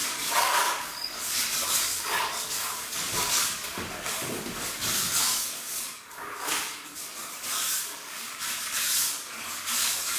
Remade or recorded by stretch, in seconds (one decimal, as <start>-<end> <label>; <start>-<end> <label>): 0.0-10.2 remade